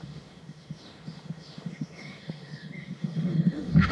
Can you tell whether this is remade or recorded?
remade